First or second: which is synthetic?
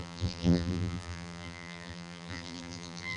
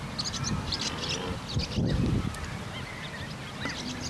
first